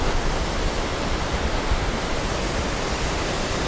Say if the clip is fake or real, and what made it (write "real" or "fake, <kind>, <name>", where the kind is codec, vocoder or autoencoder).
real